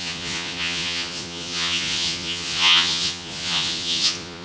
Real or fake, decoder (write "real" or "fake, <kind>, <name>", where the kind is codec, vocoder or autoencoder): fake, vocoder, Vocos